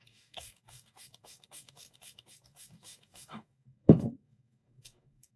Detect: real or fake fake